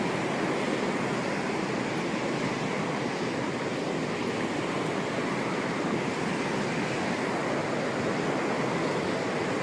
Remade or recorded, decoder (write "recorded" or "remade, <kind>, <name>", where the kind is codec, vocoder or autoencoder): recorded